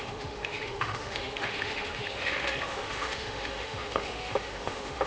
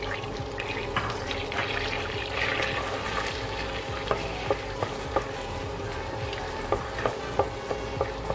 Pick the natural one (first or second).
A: second